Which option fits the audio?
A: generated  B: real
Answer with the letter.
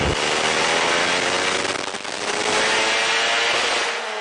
B